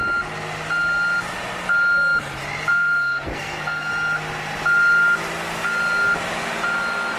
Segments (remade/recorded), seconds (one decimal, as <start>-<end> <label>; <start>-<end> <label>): 0.0-2.7 recorded; 2.7-3.9 remade; 3.9-7.2 recorded